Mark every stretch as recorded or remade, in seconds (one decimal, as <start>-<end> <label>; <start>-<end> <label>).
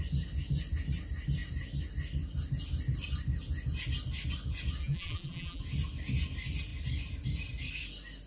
0.0-4.8 recorded; 4.8-5.6 remade; 5.6-8.3 recorded